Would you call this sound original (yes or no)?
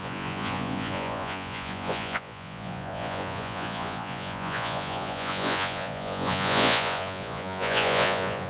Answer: no